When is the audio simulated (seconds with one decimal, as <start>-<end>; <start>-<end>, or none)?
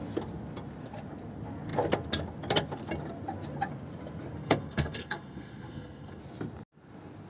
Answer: 4.4-6.2